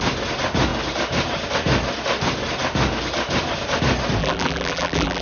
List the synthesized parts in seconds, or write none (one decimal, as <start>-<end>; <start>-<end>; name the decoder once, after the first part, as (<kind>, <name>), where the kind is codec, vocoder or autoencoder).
4.2-5.2 (vocoder, BigVGAN v2)